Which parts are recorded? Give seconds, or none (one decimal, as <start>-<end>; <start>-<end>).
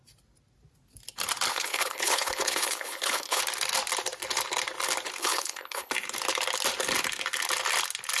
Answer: 0.0-1.5; 3.4-5.2; 5.9-8.2